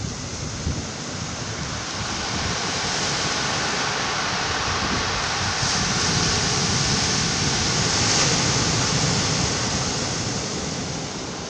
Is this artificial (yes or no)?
no